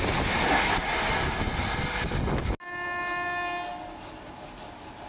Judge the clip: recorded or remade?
recorded